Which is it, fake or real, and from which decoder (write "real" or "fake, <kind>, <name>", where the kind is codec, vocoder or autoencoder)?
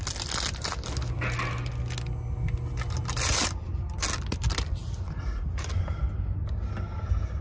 real